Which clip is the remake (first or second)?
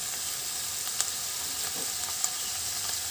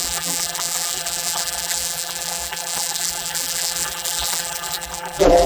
second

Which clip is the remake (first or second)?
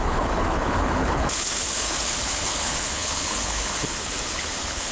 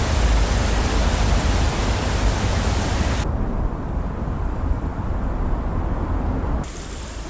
first